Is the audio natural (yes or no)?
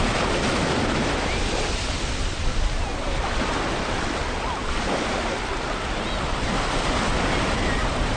yes